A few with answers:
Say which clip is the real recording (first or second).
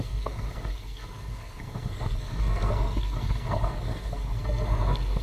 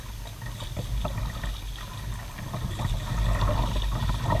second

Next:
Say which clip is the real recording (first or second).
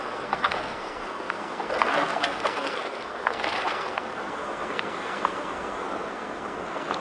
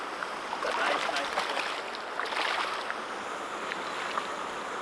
second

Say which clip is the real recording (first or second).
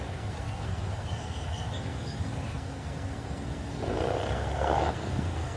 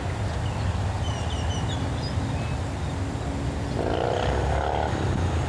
second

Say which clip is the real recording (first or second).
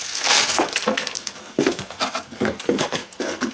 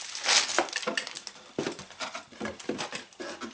second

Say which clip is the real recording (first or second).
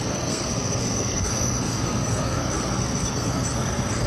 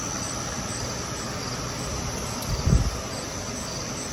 second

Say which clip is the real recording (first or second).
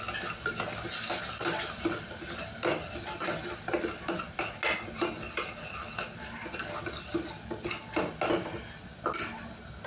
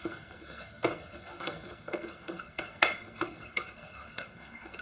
first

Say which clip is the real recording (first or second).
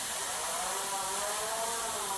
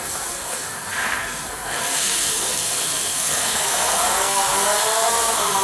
first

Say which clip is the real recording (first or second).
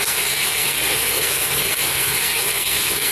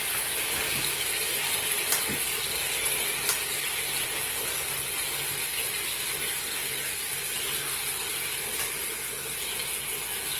second